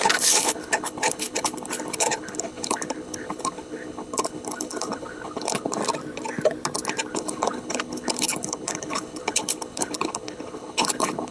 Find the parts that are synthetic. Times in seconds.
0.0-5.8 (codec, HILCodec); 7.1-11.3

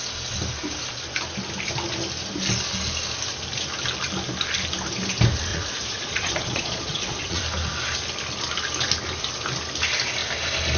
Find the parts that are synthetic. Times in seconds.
5.5-7.4 (vocoder, Vocos)

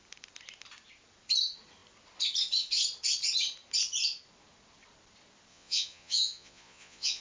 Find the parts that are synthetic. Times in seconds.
5.5-7.2 (vocoder, Vocos)

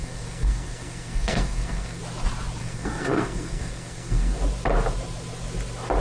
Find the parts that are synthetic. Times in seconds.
0.0-2.0 (codec, SNAC); 2.6-4.4

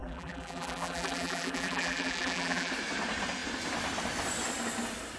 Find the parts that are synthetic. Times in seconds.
0.0-2.7 (vocoder, BigVGAN v2)

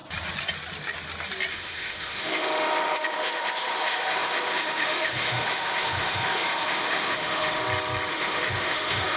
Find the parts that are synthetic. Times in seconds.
1.5-7.6 (autoencoder, DAC-VAE); 8.1-9.2

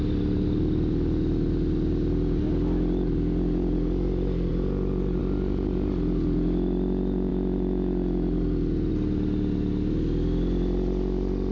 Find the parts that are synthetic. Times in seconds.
none

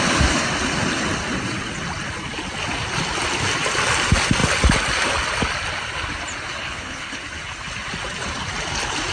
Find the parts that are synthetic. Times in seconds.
6.6-7.2 (codec, HILCodec)